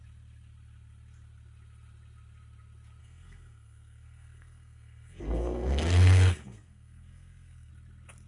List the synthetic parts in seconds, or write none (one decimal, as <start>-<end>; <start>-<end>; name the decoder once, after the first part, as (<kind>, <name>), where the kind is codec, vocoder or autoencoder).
3.0-7.7 (codec, SNAC)